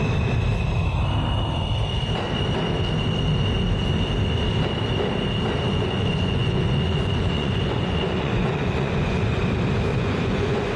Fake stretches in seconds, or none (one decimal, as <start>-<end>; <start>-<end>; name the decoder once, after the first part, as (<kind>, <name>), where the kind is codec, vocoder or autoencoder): 5.7-9.4 (vocoder, Vocos); 9.9-10.8